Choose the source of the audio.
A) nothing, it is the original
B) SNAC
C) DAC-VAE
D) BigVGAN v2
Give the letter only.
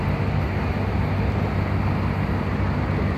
A